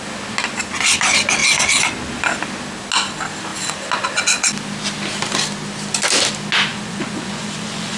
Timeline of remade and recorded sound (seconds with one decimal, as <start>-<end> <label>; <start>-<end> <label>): 0.0-6.7 recorded; 6.7-8.0 remade